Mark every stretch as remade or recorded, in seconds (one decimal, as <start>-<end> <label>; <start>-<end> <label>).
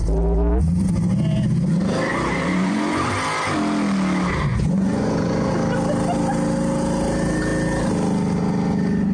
0.0-2.1 recorded; 2.1-3.1 remade; 3.1-4.5 recorded; 4.5-5.5 remade; 5.5-9.1 recorded